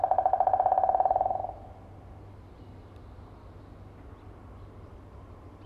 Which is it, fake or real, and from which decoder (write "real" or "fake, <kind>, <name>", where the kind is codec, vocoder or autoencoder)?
real